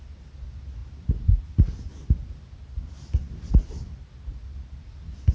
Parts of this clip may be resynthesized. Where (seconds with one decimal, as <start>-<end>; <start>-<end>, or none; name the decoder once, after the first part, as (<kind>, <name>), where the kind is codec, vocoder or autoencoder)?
none